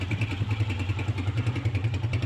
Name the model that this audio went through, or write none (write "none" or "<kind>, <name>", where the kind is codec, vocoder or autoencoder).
none